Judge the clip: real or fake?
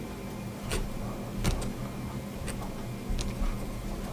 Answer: real